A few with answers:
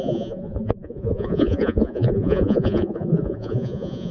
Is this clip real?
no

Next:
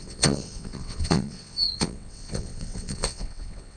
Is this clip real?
no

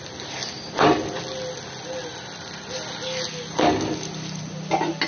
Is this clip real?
yes